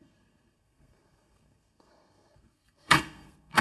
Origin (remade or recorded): remade